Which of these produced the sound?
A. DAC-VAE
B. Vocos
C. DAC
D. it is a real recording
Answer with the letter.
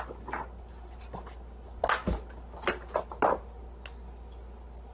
D